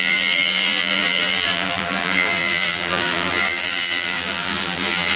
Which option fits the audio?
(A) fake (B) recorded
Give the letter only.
A